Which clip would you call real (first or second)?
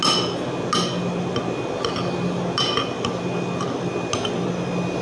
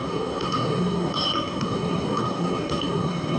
first